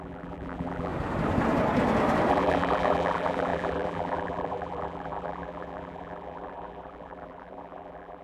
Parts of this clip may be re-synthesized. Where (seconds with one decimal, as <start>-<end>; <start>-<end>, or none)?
0.0-0.9; 2.3-8.2